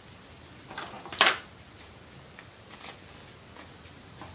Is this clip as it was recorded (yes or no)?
yes